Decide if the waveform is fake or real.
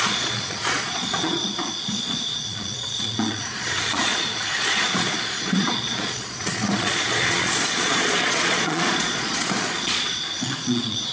fake